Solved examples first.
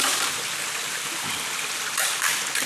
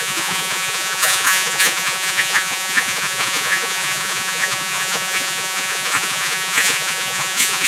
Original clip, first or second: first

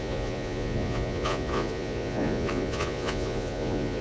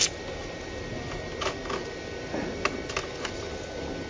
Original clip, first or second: second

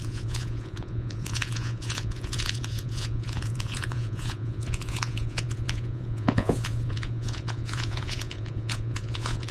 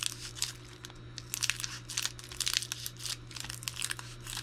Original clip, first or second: second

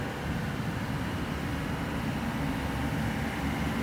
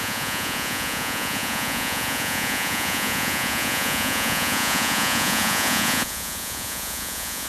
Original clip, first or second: first